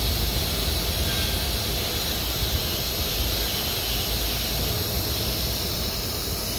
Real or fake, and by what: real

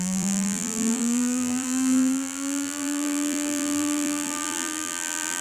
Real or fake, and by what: fake, vocoder, BigVGAN v2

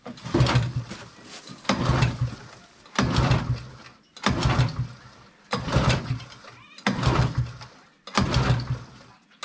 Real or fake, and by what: real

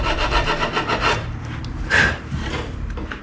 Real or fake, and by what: fake, vocoder, BigVGAN v2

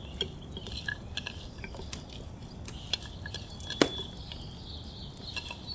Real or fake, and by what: real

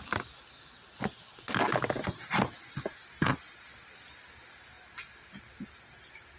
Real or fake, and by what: real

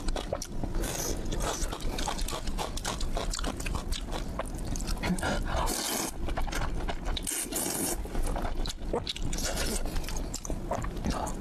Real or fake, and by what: real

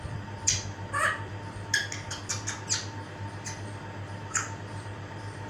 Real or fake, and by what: real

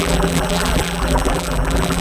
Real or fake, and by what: fake, vocoder, BigVGAN v2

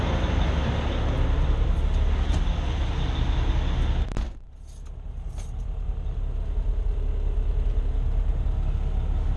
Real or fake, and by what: real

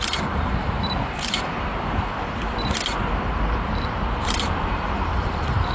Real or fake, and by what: fake, vocoder, BigVGAN v2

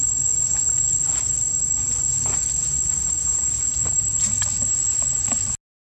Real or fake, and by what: real